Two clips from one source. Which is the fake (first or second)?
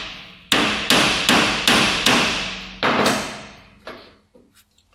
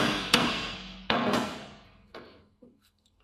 second